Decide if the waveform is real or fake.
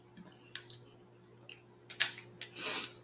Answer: real